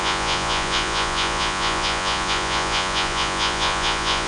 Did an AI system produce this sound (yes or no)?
yes